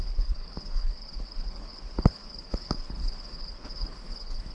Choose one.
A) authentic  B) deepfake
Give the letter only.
B